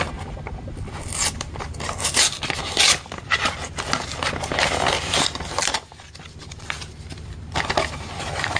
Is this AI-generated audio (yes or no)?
no